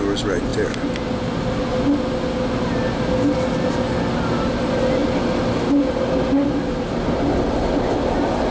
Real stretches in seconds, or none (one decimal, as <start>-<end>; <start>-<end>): 0.0-8.5